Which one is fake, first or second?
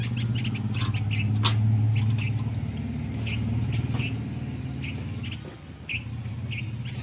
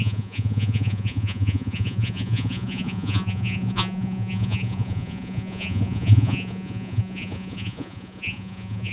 second